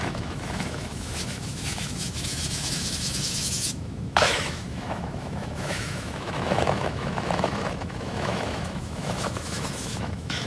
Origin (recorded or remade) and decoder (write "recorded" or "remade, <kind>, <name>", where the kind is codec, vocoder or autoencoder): remade, autoencoder, DAC-VAE